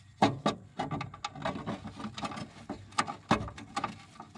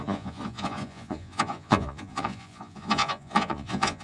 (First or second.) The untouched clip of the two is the first